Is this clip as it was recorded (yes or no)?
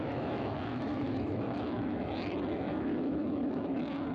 no